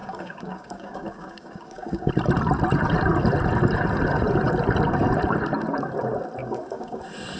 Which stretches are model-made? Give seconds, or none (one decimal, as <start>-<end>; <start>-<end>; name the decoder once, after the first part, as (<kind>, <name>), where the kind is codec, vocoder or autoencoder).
0.0-2.1 (codec, DAC); 6.4-7.0